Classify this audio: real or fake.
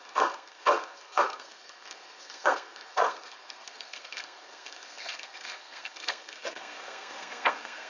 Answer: fake